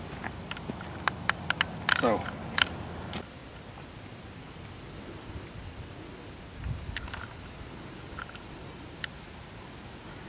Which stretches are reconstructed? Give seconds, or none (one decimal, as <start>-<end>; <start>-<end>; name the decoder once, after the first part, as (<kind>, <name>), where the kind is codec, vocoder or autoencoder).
none